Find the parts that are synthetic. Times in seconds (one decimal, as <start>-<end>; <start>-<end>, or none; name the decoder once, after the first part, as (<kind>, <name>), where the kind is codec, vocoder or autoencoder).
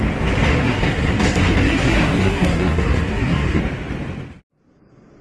0.5-3.6 (codec, SNAC)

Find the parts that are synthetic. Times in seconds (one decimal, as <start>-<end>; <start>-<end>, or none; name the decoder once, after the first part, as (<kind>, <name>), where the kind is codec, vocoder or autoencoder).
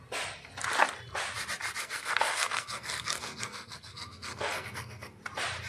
1.8-5.2 (codec, SNAC)